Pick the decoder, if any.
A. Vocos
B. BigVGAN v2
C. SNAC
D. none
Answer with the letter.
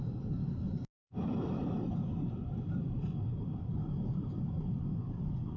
D